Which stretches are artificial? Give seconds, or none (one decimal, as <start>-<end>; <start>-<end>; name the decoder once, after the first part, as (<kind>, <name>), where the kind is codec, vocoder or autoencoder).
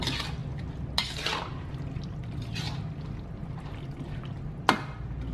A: none